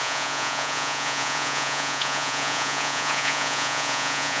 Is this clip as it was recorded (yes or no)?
no